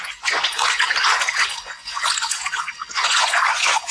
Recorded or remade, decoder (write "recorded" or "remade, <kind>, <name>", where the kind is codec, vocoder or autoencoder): remade, vocoder, Vocos